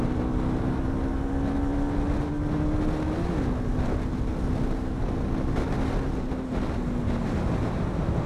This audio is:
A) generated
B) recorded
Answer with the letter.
B